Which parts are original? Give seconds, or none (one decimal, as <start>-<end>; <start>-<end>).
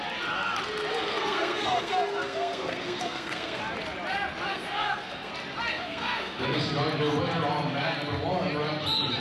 0.0-0.9; 3.6-4.5; 5.3-5.7; 6.6-9.2